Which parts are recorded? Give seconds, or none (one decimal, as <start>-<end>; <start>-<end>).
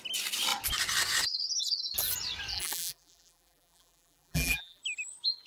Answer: 0.0-2.5; 4.8-5.5